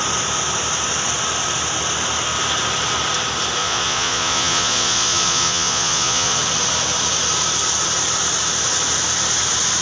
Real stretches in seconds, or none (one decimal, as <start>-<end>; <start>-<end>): 0.0-3.6; 6.4-9.8